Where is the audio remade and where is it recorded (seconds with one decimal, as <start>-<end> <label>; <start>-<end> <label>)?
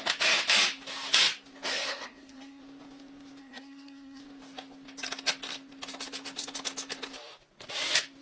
0.0-1.7 recorded; 1.7-2.6 remade; 2.6-3.4 recorded; 3.4-4.2 remade; 4.2-8.2 recorded